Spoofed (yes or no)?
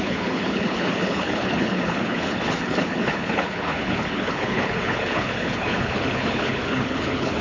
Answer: yes